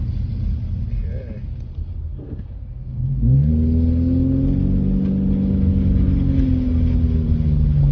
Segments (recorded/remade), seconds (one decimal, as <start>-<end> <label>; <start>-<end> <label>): 0.0-2.1 recorded; 2.1-3.5 remade; 3.5-7.9 recorded

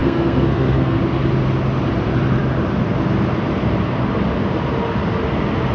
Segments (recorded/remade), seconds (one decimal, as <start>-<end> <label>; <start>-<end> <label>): 0.0-1.0 remade; 1.0-5.7 recorded

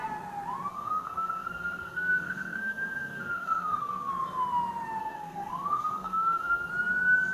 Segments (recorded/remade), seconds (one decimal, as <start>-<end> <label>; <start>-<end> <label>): 0.0-0.7 recorded; 0.7-4.1 remade; 4.1-5.0 recorded; 5.0-6.7 remade; 6.7-7.3 recorded

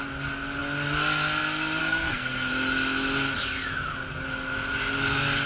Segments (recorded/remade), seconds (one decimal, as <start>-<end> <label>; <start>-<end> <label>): 0.0-1.8 recorded; 1.8-2.5 remade; 2.5-5.5 recorded

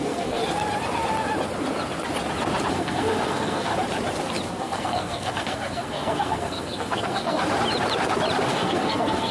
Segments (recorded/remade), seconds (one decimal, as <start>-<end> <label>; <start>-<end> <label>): 0.0-0.4 remade; 0.4-2.7 recorded; 2.7-3.7 remade; 3.7-4.5 recorded; 4.5-7.4 remade; 7.4-8.5 recorded; 8.5-9.3 remade

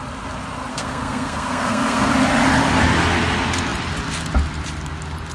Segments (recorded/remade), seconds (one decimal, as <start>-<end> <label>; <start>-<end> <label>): 0.0-0.7 recorded; 0.7-2.1 remade; 2.1-5.3 recorded